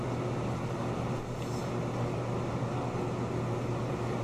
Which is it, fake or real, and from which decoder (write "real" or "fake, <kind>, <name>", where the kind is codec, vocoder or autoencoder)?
real